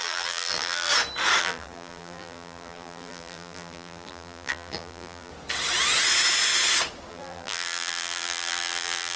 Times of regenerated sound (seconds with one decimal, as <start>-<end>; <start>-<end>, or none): 0.0-0.9; 1.4-5.3; 7.1-9.2